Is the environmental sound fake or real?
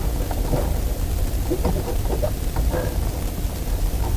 real